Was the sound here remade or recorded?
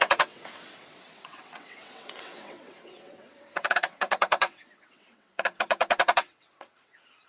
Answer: remade